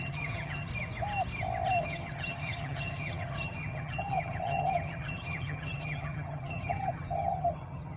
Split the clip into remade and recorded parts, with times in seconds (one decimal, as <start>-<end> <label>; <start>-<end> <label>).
0.0-0.7 remade; 0.7-1.8 recorded; 1.8-8.0 remade